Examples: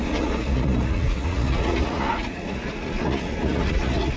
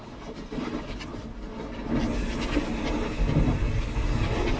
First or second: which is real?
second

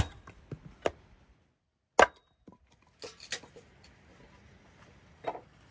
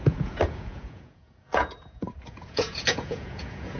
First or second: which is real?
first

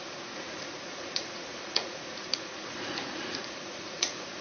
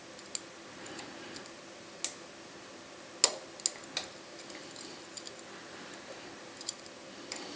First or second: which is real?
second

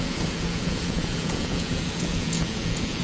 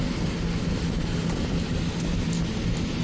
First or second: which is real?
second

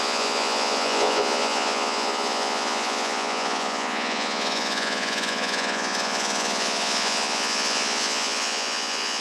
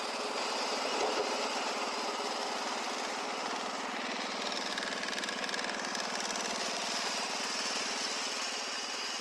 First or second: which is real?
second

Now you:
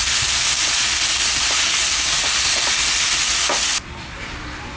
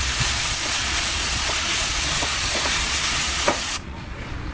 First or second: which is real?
first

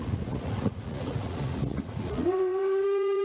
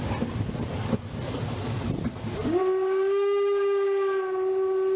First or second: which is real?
second